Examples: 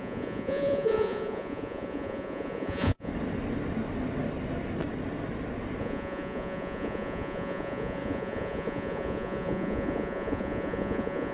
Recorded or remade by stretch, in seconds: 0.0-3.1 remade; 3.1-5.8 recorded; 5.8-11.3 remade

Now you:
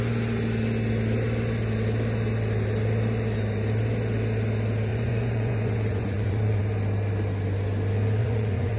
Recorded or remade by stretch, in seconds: 0.0-4.9 recorded; 4.9-6.6 remade; 6.6-8.2 recorded; 8.2-8.8 remade